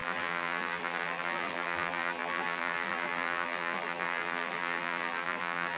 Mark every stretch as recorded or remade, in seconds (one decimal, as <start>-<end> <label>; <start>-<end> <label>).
0.0-5.8 remade